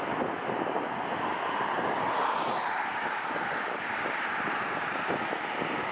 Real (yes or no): yes